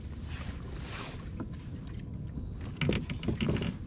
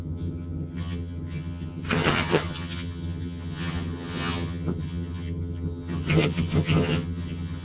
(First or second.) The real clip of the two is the first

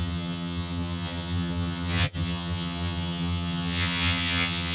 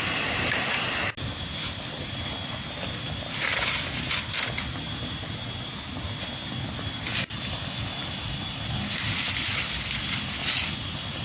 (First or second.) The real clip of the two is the second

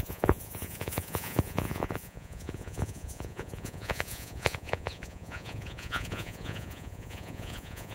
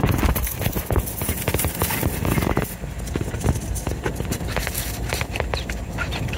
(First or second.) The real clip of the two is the second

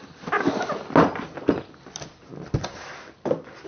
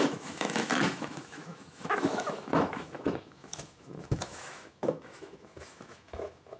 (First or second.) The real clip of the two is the first